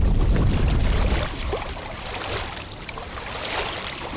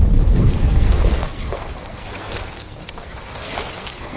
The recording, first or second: first